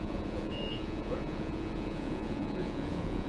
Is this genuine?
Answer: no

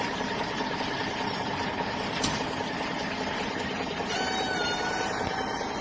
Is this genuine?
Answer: yes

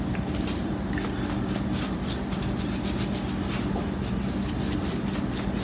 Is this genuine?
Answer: yes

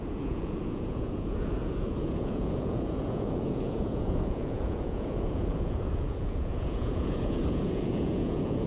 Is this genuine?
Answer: no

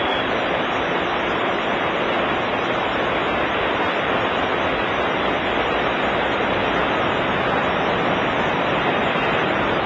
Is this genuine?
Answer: yes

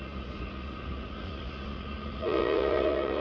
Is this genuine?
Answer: no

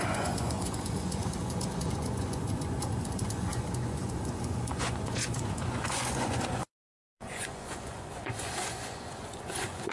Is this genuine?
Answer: no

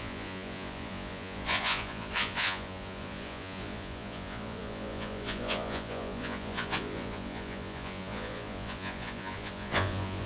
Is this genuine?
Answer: no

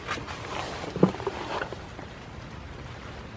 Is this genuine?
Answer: yes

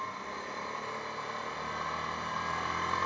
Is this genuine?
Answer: yes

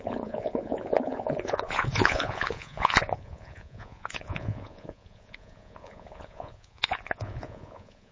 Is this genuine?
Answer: no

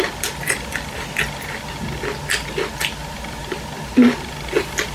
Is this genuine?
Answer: yes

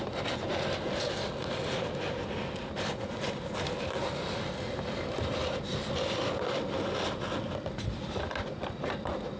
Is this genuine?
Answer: yes